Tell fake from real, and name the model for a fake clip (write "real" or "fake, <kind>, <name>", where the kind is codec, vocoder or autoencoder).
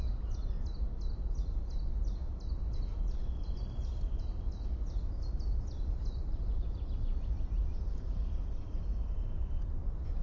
real